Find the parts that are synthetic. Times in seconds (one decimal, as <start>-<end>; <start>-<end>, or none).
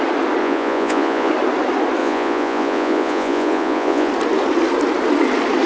0.4-1.3; 2.0-4.1